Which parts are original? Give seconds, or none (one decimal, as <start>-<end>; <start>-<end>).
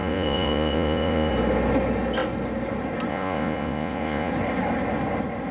1.3-3.1; 4.3-5.5